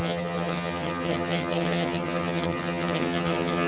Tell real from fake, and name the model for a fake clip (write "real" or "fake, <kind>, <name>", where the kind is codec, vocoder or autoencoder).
fake, vocoder, HiFi-GAN